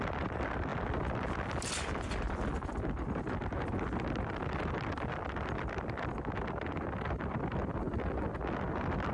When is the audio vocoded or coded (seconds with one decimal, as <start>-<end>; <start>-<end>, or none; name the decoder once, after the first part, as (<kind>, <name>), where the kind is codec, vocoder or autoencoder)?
none